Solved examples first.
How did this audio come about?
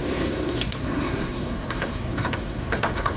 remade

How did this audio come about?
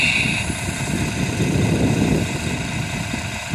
recorded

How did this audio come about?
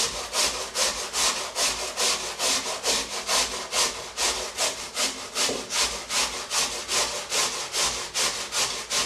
recorded